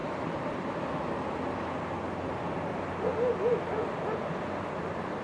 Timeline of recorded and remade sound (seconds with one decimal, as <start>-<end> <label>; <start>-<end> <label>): 0.0-3.1 remade; 3.1-5.2 recorded

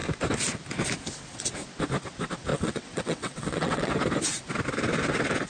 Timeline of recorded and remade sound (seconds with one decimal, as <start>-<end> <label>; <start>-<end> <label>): 0.0-2.5 recorded; 2.5-3.9 remade; 3.9-5.5 recorded

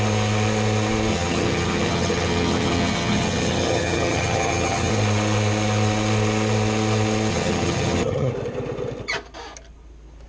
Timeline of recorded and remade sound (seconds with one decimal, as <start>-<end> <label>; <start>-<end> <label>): 0.0-1.1 recorded; 1.1-4.9 remade; 4.9-7.3 recorded; 7.3-8.3 remade; 8.3-10.3 recorded

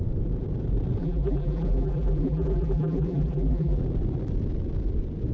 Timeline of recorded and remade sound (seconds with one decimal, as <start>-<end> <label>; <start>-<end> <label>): 0.0-1.0 recorded; 1.0-3.8 remade; 3.8-5.3 recorded

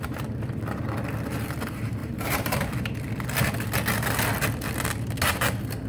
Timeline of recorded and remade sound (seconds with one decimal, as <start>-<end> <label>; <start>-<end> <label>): 0.0-2.0 recorded; 2.0-2.7 remade; 2.7-5.9 recorded

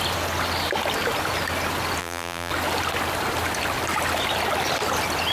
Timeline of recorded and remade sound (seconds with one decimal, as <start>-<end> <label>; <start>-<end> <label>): 0.0-2.0 recorded; 2.0-2.5 remade; 2.5-5.3 recorded

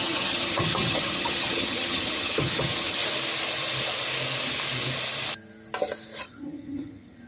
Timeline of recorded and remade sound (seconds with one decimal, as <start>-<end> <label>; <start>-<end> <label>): 0.0-3.0 remade; 3.0-6.2 recorded; 6.2-7.3 remade